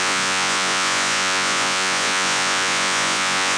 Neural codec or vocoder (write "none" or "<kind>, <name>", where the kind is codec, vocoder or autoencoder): vocoder, Vocos